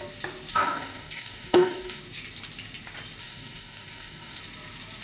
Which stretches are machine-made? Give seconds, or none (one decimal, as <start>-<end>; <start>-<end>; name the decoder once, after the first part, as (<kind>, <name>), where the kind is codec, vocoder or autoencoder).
0.5-2.0 (codec, DAC); 3.2-4.4